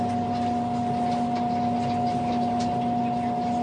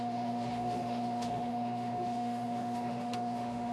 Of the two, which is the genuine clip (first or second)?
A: first